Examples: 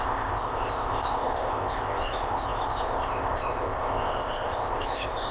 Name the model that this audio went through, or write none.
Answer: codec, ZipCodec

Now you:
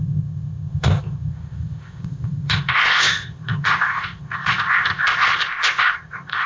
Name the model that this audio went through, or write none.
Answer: codec, ZipCodec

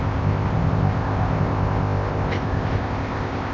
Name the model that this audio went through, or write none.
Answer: codec, ZipCodec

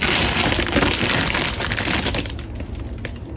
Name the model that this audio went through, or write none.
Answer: none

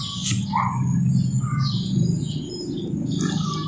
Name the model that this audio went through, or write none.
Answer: none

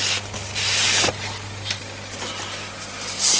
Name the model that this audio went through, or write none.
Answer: none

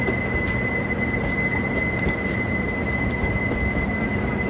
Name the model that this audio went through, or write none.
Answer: none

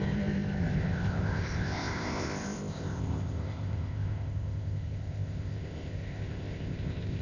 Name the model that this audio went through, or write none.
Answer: codec, ZipCodec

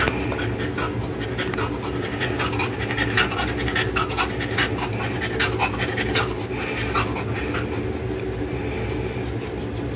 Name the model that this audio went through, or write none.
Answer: none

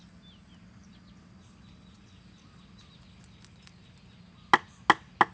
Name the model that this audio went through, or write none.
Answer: none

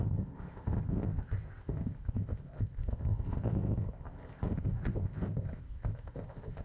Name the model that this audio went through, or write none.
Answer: codec, ZipCodec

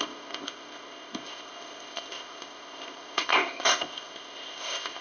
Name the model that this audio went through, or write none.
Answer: codec, ZipCodec